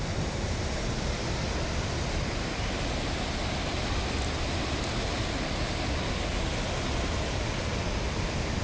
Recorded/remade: recorded